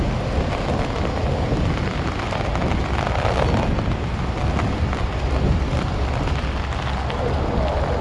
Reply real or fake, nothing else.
real